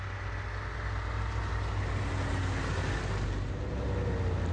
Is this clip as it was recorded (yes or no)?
yes